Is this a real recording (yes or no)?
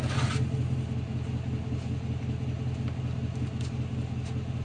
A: yes